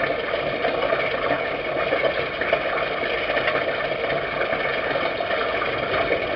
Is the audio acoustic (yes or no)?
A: yes